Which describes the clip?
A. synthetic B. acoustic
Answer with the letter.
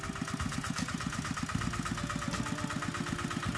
B